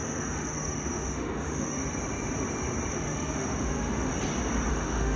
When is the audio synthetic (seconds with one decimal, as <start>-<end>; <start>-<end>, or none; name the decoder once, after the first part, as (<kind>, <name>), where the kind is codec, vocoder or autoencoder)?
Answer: 0.0-1.8 (autoencoder, DAC-VAE); 2.9-4.1; 4.7-5.2

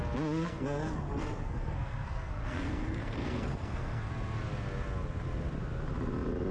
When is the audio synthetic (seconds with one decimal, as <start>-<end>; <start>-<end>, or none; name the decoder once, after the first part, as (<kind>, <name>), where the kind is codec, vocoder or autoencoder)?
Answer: 0.4-4.1 (codec, SNAC)

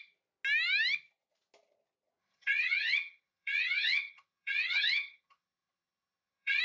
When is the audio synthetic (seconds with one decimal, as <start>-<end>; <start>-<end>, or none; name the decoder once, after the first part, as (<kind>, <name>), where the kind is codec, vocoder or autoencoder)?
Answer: 2.2-6.6 (vocoder, HiFi-GAN)